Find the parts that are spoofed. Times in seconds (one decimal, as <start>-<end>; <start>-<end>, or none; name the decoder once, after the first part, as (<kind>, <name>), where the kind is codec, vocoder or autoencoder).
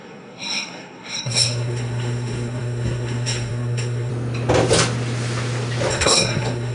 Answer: 0.0-4.1 (codec, SNAC); 5.9-6.7